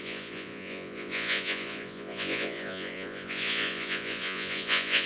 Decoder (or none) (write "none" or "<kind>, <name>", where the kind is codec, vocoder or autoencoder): vocoder, Vocos